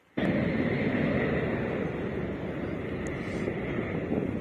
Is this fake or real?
real